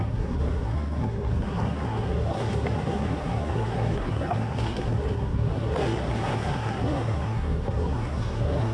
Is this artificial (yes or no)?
yes